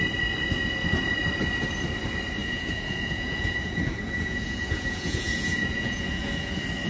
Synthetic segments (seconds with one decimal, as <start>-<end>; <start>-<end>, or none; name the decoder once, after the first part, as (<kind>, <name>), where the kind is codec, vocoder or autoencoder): 2.4-6.5 (vocoder, Vocos)